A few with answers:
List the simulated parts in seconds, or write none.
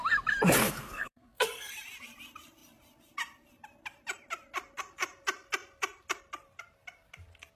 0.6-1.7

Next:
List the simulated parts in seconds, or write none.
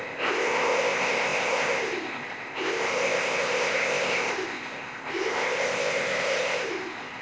0.0-7.2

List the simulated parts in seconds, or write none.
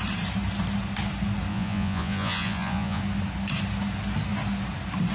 1.5-3.0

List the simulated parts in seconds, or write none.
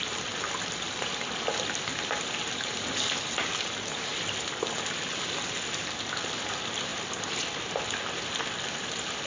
none